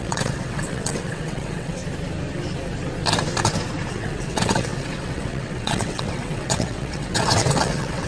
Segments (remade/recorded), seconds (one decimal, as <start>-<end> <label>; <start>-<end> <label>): 0.0-1.8 remade; 1.8-3.9 recorded; 3.9-8.1 remade